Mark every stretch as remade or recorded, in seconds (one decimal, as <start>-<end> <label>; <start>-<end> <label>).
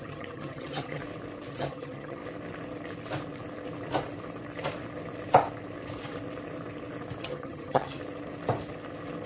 0.0-1.0 remade; 1.0-1.5 recorded; 1.5-2.2 remade; 2.2-7.2 recorded; 7.2-8.0 remade; 8.0-9.3 recorded